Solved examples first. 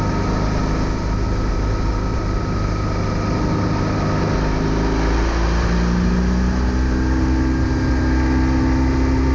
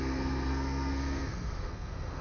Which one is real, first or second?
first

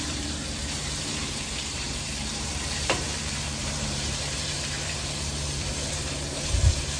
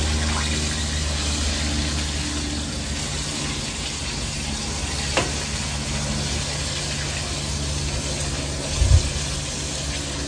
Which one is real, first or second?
second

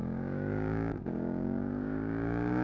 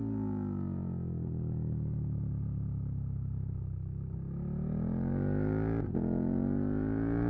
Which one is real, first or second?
second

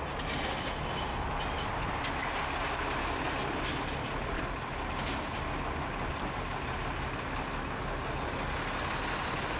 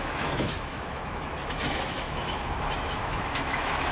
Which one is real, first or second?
first